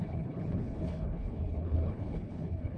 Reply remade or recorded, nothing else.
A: remade